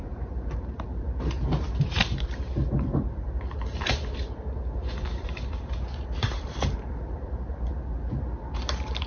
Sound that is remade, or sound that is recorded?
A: remade